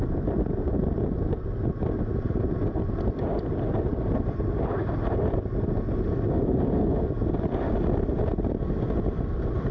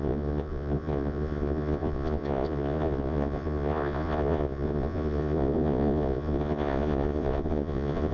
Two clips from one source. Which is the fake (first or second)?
second